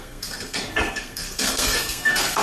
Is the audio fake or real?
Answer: fake